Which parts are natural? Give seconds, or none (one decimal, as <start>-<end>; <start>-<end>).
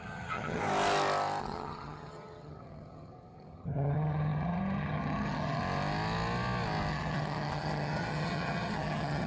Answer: 0.6-1.4; 5.6-6.9